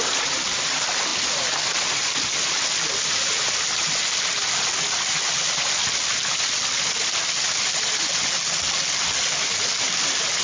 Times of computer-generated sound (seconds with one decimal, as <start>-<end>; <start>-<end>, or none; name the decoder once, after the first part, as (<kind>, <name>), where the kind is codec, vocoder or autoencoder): none

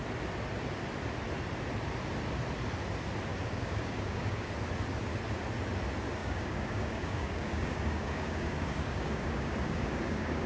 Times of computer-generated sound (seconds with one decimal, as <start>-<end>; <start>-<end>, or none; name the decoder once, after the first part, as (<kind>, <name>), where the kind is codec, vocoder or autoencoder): 3.3-4.5 (codec, DAC); 6.2-10.5

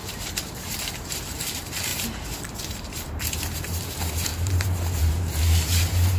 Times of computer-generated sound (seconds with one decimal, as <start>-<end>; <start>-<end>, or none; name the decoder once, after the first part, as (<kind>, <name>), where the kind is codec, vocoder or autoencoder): 0.0-6.2 (vocoder, BigVGAN v2)

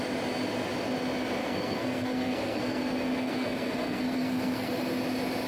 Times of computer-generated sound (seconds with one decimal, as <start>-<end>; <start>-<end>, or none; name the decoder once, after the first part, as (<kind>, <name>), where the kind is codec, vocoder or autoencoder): 1.4-4.7 (codec, SNAC)